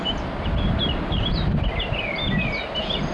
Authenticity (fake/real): real